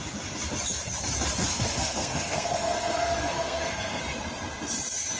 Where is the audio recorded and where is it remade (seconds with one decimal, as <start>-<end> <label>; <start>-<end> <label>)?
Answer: 0.0-1.5 recorded; 1.5-4.0 remade; 4.0-5.2 recorded